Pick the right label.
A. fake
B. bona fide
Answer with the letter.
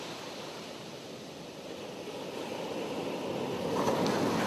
B